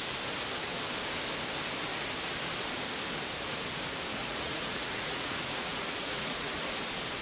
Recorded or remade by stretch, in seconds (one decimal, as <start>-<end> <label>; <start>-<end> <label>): 0.0-4.1 recorded; 4.1-6.5 remade; 6.5-7.2 recorded